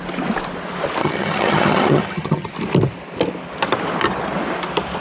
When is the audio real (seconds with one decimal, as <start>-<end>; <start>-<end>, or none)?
0.0-1.0; 2.5-5.0